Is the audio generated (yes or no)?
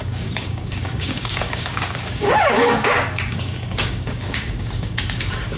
yes